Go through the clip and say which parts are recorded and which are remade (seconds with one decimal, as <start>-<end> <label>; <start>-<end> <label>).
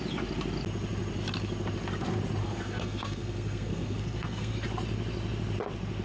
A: 0.0-2.4 recorded; 2.4-4.5 remade; 4.5-6.0 recorded